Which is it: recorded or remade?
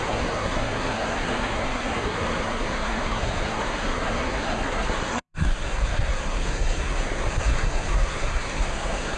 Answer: remade